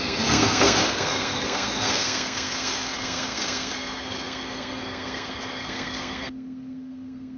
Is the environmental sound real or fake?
fake